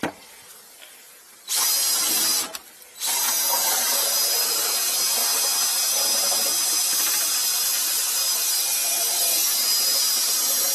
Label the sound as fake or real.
real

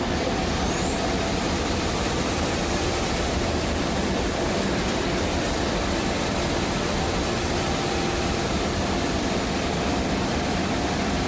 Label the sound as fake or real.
fake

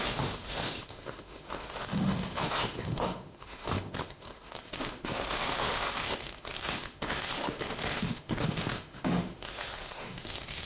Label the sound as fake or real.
fake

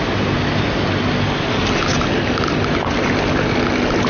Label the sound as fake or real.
real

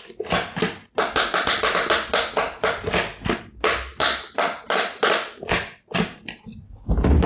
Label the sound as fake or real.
real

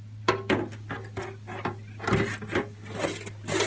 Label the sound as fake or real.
real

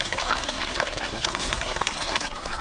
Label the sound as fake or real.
fake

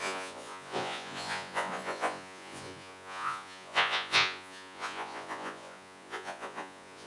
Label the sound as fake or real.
fake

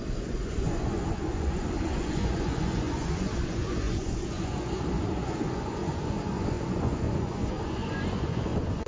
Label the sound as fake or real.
fake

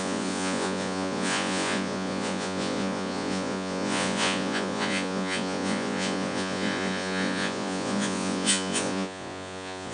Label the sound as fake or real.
fake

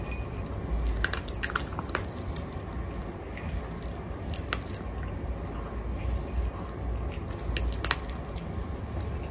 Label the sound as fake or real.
real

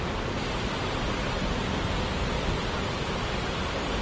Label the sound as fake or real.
real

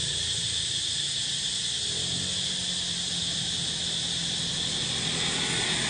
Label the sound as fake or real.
real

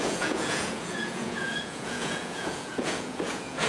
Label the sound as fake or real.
fake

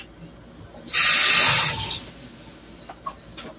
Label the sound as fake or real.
real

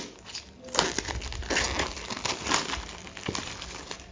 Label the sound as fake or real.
real